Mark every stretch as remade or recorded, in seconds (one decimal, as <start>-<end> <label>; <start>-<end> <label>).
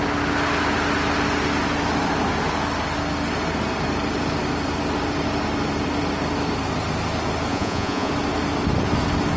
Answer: 0.0-7.5 recorded; 7.5-8.1 remade; 8.1-9.4 recorded